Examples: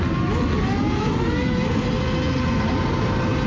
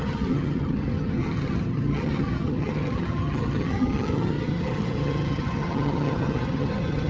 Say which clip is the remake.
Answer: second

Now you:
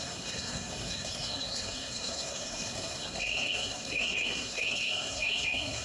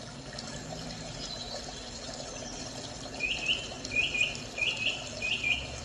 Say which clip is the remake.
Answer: first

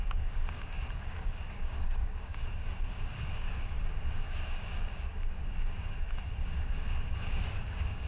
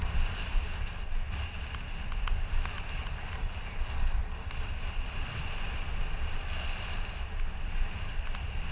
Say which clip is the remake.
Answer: first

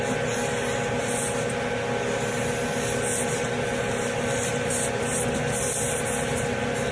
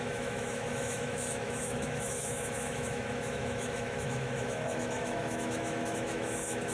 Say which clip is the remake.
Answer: second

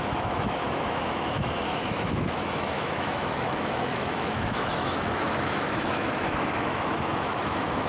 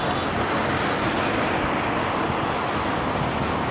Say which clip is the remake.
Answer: first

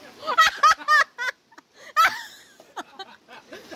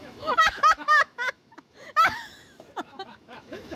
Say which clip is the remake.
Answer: second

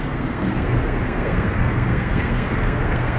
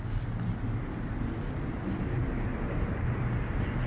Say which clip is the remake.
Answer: first